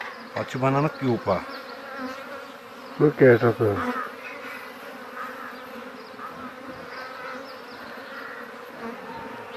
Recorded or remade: recorded